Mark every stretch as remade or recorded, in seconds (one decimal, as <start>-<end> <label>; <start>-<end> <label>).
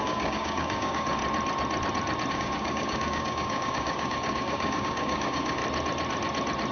0.0-1.2 remade; 1.2-2.3 recorded; 2.3-5.6 remade; 5.6-6.7 recorded